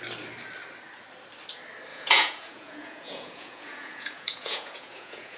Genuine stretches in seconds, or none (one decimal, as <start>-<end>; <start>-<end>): 0.0-1.9